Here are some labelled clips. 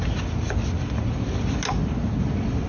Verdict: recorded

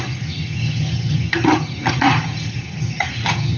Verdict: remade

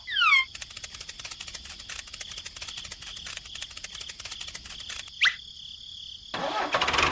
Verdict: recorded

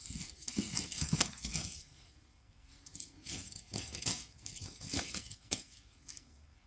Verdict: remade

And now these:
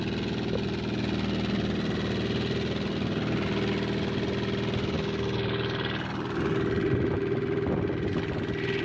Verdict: recorded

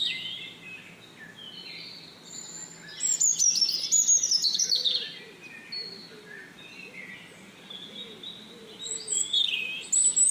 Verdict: recorded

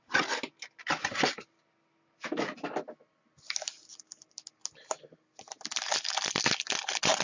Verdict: recorded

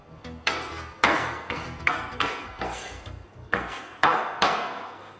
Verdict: remade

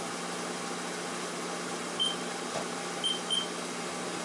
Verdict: recorded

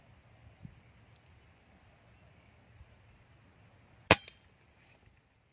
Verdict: recorded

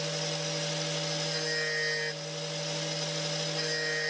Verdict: recorded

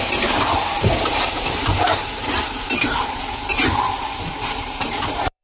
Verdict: remade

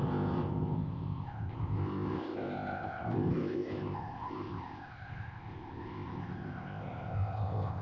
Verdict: remade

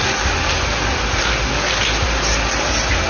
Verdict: recorded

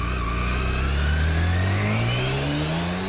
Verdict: recorded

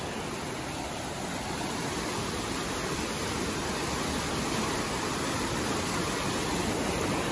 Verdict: recorded